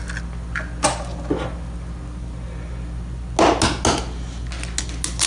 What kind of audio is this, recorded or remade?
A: recorded